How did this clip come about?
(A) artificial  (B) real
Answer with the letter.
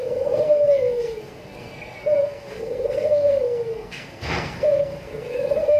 A